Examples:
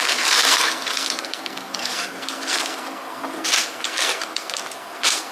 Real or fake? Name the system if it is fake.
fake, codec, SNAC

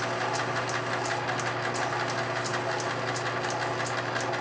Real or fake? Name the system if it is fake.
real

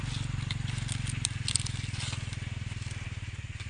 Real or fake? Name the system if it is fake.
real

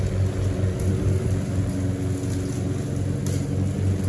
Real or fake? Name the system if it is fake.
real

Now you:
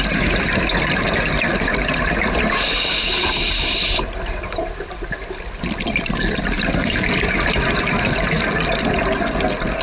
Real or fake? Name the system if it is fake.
real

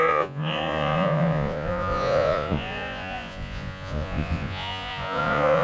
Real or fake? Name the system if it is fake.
fake, vocoder, Vocos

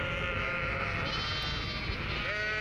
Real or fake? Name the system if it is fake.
real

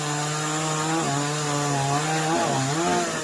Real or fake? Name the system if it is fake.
real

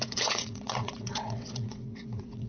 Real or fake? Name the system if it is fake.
fake, vocoder, WaveNeXt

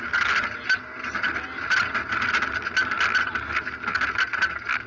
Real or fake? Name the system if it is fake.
real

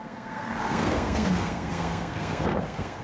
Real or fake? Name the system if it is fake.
fake, codec, SNAC